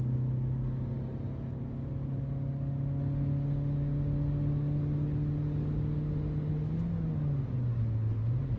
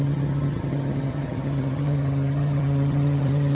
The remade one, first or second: second